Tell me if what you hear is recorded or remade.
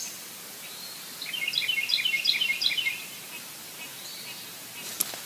remade